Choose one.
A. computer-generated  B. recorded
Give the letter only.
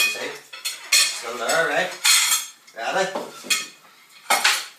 B